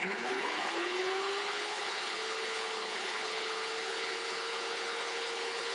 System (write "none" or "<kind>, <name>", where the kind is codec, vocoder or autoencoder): codec, HILCodec